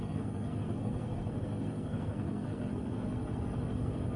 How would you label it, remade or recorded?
remade